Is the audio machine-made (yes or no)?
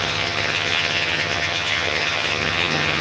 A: yes